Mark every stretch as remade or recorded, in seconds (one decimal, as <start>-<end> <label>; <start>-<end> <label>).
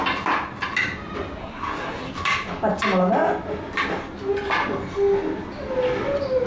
0.0-1.4 recorded; 1.4-2.1 remade; 2.1-6.5 recorded